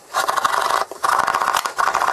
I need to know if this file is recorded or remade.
recorded